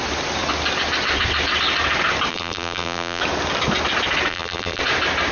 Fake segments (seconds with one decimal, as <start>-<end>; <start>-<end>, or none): 2.3-3.2; 4.3-4.8